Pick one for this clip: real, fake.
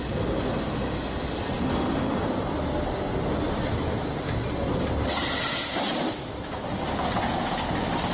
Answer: real